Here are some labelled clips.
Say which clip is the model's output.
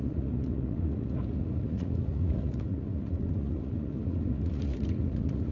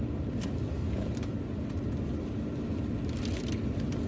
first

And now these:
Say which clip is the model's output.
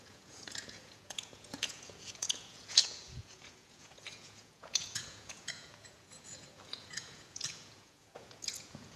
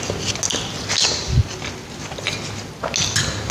first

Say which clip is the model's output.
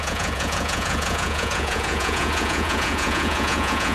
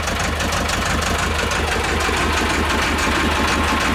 first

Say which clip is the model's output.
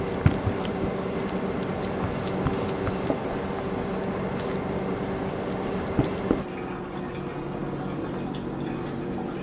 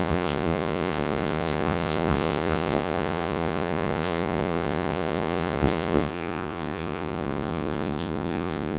second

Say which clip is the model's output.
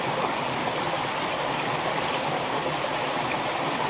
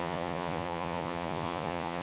second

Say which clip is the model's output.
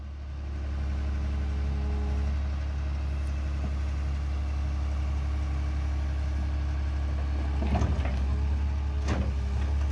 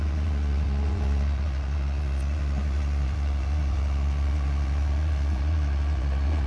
second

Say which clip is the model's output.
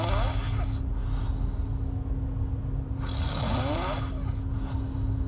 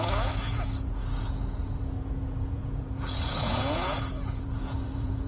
second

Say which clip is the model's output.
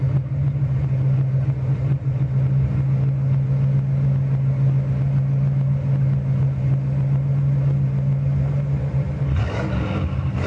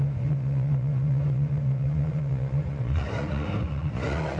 second